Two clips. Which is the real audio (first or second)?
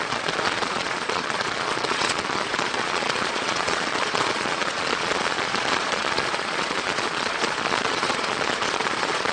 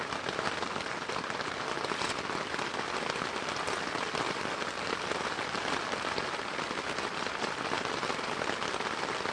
second